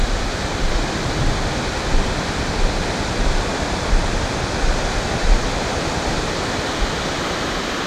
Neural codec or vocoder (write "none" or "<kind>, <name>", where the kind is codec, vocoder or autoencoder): none